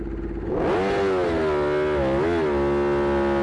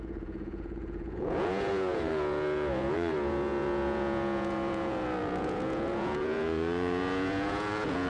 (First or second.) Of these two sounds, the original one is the first